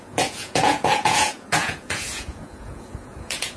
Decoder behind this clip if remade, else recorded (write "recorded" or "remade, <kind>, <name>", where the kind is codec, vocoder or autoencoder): remade, vocoder, Vocos